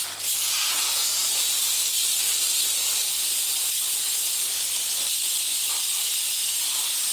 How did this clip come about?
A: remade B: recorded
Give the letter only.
B